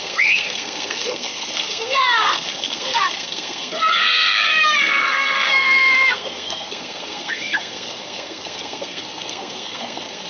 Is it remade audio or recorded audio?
remade